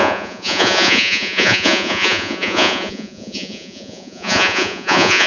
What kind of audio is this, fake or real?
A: fake